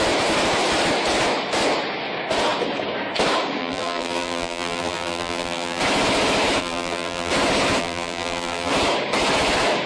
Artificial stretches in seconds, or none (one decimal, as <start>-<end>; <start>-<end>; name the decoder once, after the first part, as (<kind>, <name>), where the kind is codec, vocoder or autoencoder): 3.6-5.8 (vocoder, BigVGAN v2); 6.6-7.3; 7.8-8.7